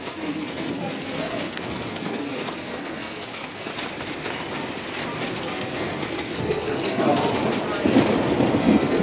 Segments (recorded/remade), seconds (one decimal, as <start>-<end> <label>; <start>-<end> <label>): 0.0-3.7 remade; 3.7-5.4 recorded; 5.4-7.4 remade; 7.4-8.6 recorded; 8.6-9.0 remade